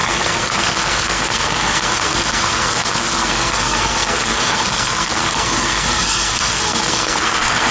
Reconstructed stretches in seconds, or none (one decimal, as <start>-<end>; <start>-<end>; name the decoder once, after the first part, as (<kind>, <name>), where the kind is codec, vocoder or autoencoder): 0.0-7.7 (codec, SNAC)